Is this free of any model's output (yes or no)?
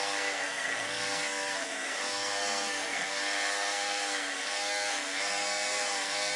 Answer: no